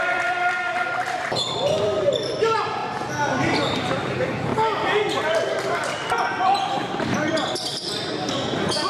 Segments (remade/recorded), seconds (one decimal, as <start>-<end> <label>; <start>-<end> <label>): 0.0-2.8 remade; 2.8-3.8 recorded; 3.8-4.5 remade; 4.5-7.0 recorded; 7.0-8.9 remade